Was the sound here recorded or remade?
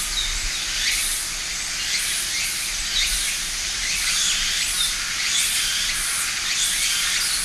recorded